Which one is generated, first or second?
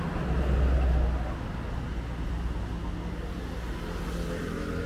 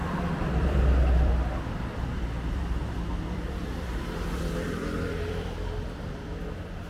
second